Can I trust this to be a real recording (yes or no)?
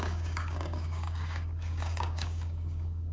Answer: no